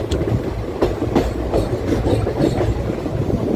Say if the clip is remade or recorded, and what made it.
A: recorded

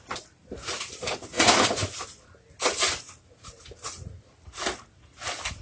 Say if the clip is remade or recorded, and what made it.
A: recorded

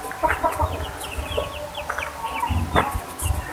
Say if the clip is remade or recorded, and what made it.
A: recorded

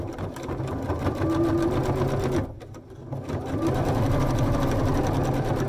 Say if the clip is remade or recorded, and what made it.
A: recorded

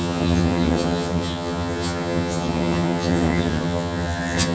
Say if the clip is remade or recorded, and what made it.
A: remade, vocoder, HiFi-GAN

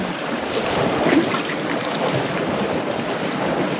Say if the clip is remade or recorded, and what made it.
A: recorded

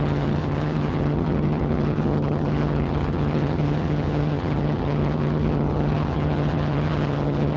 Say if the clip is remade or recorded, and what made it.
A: remade, vocoder, HiFi-GAN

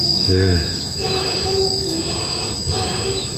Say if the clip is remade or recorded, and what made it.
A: remade, autoencoder, DAC-VAE